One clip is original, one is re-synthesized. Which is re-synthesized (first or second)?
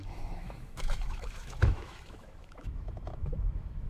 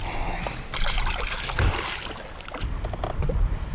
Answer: first